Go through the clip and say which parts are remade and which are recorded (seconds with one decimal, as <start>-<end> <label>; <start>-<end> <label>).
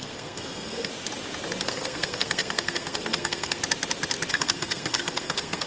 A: 0.0-0.9 remade; 0.9-1.6 recorded; 1.6-3.6 remade; 3.6-4.3 recorded; 4.3-5.7 remade